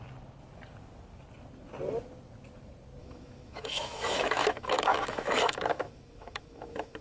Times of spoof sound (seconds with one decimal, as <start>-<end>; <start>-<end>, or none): 3.0-7.0